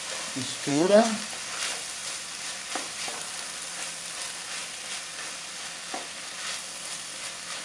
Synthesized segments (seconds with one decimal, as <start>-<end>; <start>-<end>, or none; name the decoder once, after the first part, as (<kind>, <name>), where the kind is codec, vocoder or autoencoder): 0.7-1.2 (codec, SNAC)